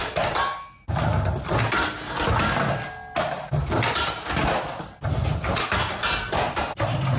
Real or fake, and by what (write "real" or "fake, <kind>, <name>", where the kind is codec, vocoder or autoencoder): real